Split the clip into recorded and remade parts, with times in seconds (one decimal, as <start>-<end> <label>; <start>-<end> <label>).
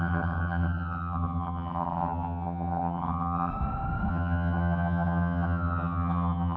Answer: 0.0-3.5 remade; 3.5-4.1 recorded; 4.1-6.6 remade